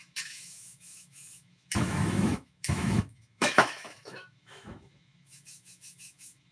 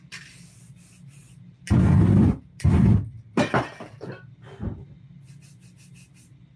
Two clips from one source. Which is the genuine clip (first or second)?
second